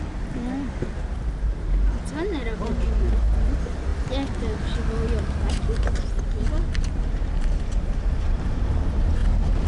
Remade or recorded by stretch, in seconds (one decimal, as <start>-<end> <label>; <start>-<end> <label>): 0.0-3.9 remade; 3.9-6.8 recorded; 6.8-9.2 remade; 9.2-9.7 recorded